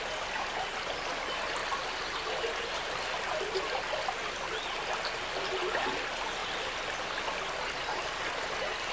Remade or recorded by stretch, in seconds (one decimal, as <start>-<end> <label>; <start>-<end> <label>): 0.0-8.9 recorded